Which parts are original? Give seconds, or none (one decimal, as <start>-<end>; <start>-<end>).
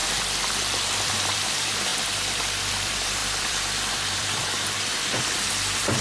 0.0-0.8; 1.9-2.6